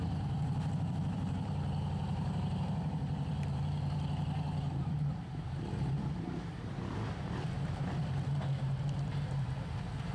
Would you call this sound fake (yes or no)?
yes